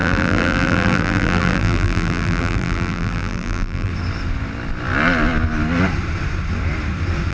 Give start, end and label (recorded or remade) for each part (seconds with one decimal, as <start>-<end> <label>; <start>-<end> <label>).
0.0-3.9 remade; 3.9-7.3 recorded